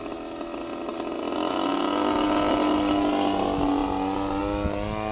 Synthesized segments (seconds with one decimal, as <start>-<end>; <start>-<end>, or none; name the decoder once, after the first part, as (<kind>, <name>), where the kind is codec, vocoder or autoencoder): none